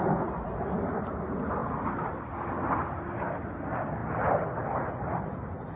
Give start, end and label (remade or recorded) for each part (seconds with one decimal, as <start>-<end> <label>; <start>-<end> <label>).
0.0-5.8 recorded